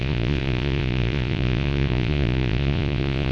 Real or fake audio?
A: fake